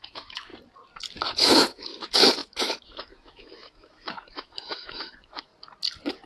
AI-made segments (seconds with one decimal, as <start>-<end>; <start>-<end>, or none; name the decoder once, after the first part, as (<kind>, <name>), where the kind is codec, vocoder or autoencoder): 0.0-0.5 (autoencoder, DAC-VAE); 1.3-5.5